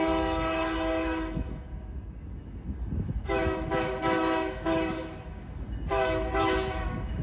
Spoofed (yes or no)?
yes